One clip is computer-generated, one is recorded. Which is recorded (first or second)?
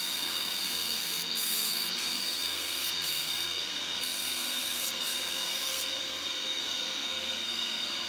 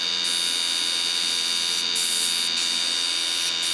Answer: second